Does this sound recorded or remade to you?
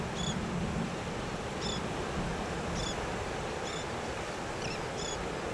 recorded